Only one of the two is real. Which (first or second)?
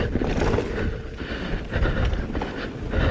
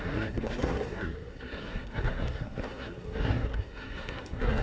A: first